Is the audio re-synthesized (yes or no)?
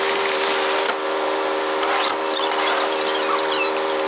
no